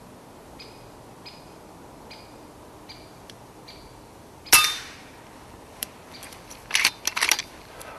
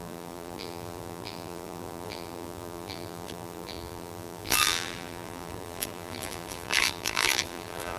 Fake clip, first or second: second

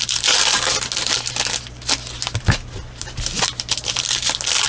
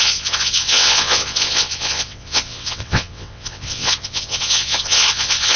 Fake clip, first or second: second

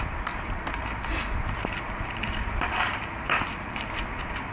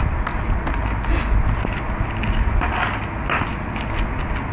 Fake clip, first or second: first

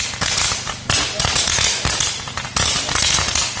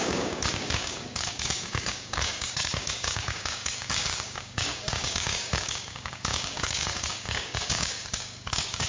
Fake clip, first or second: second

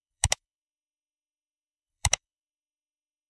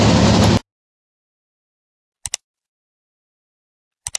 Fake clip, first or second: first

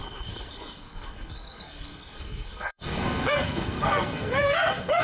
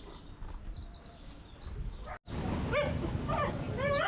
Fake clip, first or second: first